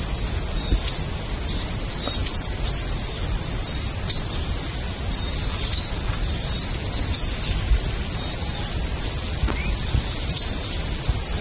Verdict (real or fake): real